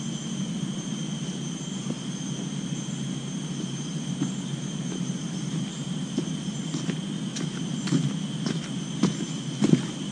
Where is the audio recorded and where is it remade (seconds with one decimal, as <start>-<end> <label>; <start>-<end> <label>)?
0.0-10.1 recorded